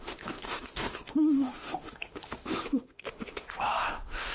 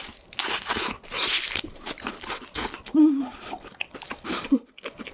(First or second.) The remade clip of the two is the first